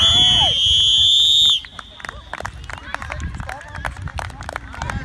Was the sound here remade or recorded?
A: recorded